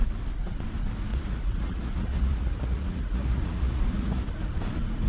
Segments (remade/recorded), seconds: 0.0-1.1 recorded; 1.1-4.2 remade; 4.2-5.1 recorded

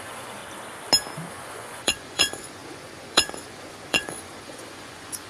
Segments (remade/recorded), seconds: 0.0-0.4 remade; 0.4-1.3 recorded; 1.3-5.3 remade